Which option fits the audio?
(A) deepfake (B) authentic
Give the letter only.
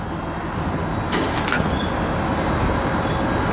B